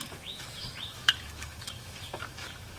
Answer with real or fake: fake